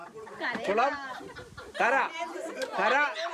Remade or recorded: recorded